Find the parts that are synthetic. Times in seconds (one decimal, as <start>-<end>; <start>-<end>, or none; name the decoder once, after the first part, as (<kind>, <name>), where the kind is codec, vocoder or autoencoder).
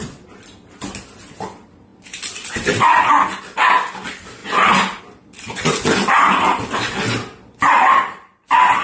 none